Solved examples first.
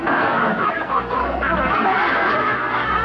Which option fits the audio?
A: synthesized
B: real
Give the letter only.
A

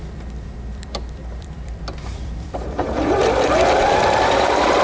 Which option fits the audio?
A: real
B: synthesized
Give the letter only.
B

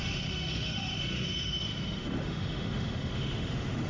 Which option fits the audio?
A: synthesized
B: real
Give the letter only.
A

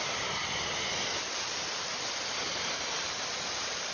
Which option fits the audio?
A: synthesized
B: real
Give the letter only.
B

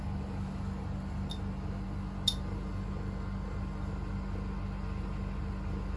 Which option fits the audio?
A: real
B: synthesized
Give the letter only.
A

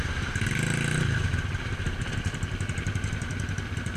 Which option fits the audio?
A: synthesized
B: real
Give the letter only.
B